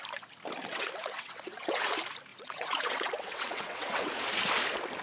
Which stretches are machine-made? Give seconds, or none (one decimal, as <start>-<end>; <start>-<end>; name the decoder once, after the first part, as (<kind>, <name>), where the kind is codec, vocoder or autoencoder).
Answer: 0.7-1.9 (vocoder, WaveNeXt); 2.3-4.1